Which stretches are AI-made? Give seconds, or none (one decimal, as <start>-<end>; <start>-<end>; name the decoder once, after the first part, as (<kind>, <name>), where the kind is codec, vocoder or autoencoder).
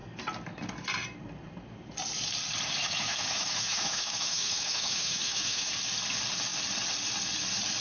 2.8-5.7 (autoencoder, DAC-VAE)